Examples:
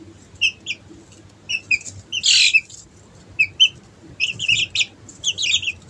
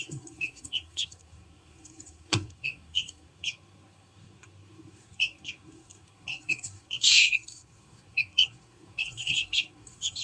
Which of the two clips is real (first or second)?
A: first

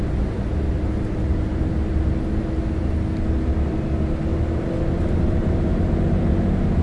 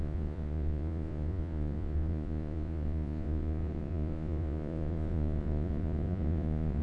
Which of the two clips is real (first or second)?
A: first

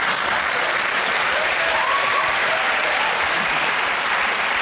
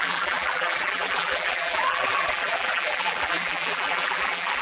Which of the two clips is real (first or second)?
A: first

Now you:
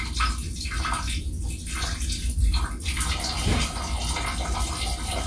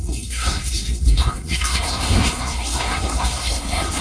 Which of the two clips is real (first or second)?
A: first